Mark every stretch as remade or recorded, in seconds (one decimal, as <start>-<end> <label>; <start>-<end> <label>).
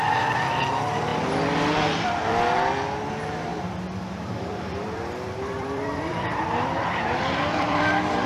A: 0.0-3.5 recorded; 3.5-7.8 remade; 7.8-8.3 recorded